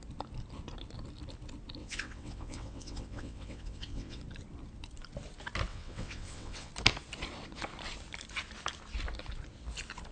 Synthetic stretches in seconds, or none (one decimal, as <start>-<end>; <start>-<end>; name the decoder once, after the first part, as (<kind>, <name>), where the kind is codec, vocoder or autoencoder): 1.8-4.2 (vocoder, WaveNeXt); 5.7-6.7